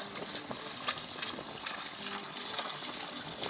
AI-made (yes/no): no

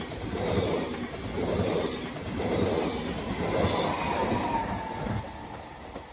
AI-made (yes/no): no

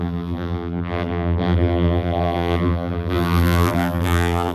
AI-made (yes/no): yes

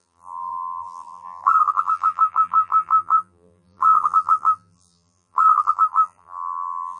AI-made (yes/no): yes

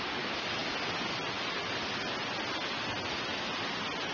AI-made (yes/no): no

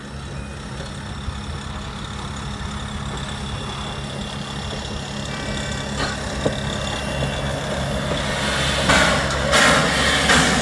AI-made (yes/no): no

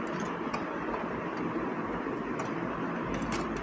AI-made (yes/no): yes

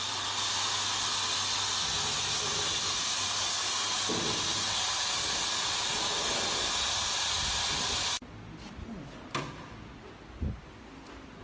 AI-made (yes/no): no